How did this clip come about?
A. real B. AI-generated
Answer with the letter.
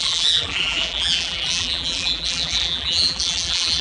B